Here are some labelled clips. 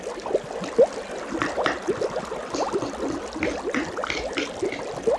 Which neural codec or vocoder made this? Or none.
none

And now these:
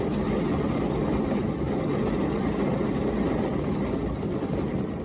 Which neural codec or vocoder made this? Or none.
none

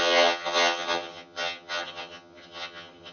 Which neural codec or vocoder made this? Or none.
vocoder, HiFi-GAN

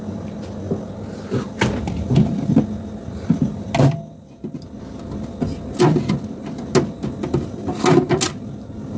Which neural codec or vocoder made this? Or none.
none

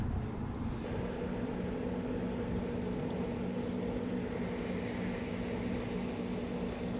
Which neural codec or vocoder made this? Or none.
none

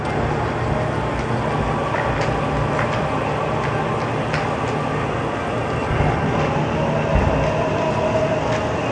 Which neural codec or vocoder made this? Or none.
none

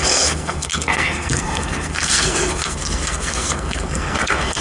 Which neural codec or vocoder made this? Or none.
codec, SNAC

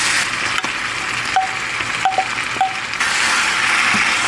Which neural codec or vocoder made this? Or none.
none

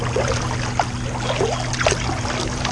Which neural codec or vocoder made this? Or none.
none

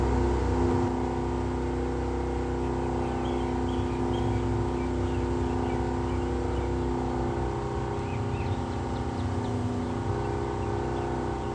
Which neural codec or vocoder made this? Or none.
none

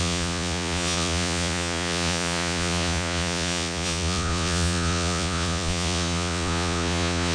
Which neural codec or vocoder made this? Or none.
vocoder, Vocos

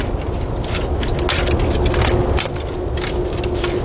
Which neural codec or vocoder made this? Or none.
none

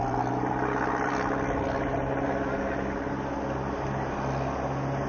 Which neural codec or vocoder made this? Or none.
none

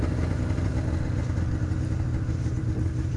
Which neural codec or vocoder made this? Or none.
none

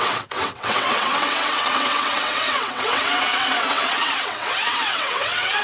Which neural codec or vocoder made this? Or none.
vocoder, WaveNeXt